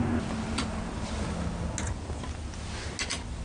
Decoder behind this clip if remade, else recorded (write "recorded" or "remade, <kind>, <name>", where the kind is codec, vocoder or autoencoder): recorded